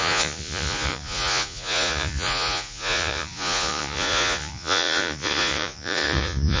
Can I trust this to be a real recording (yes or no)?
no